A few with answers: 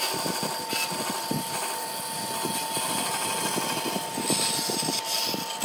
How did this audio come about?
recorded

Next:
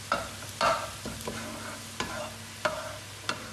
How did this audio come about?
recorded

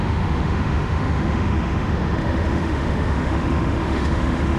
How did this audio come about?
remade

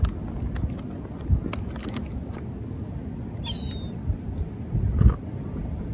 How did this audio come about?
recorded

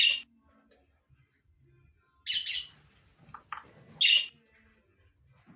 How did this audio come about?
recorded